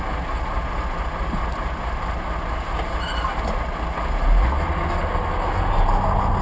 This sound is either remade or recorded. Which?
recorded